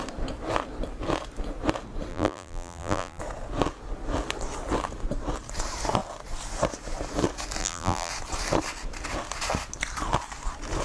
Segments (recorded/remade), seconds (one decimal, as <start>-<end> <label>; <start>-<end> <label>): 0.0-2.1 recorded; 2.1-3.2 remade; 3.2-7.6 recorded; 7.6-8.1 remade; 8.1-10.8 recorded